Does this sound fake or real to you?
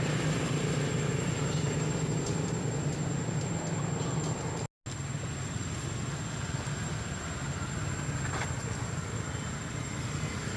real